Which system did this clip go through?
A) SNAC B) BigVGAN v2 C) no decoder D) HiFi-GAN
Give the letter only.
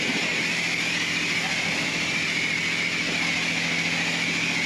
C